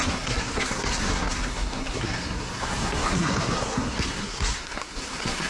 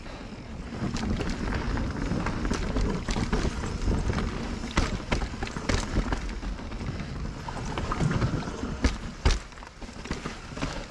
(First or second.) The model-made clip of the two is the first